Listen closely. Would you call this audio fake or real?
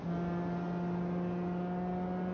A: real